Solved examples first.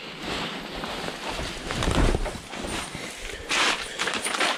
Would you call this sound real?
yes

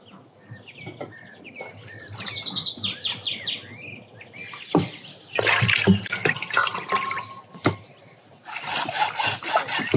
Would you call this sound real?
yes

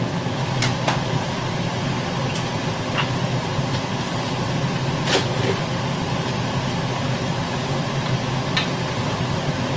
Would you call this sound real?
yes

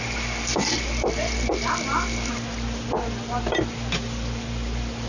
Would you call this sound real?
yes